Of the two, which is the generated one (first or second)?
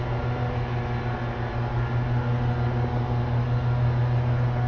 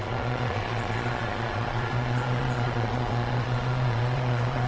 second